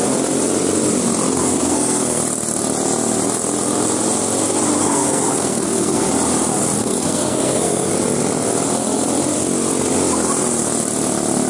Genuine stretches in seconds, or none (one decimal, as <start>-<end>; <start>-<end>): 0.0-1.4; 2.2-4.8; 6.1-6.8; 7.9-11.5